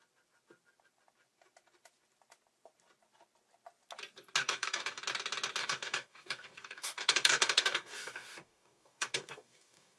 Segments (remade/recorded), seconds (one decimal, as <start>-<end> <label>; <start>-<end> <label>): 0.0-4.4 recorded; 4.4-5.0 remade; 5.0-5.6 recorded; 5.6-10.0 remade